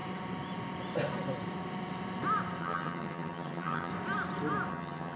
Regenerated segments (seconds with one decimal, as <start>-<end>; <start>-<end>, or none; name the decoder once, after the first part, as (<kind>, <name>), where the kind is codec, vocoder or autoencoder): 2.6-3.9 (vocoder, HiFi-GAN); 4.7-5.2